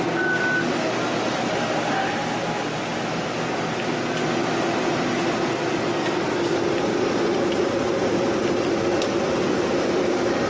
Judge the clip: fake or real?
real